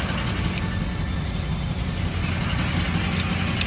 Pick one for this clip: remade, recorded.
recorded